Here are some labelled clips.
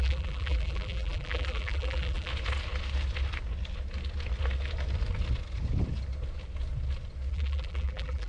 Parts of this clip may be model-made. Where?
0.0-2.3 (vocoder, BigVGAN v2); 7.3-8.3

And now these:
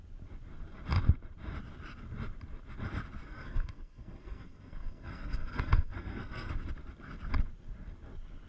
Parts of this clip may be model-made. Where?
3.2-6.5 (codec, SNAC)

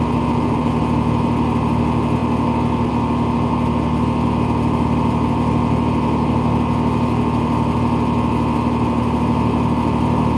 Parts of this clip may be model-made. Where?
none

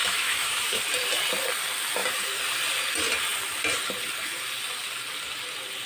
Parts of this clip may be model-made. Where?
0.0-0.8 (autoencoder, DAC-VAE)

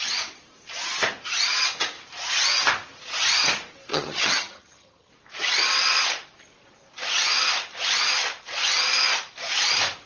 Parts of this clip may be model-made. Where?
3.9-5.1 (vocoder, HiFi-GAN)